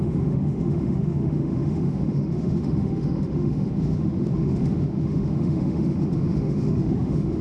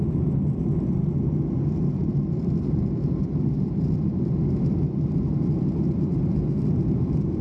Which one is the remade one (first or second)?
first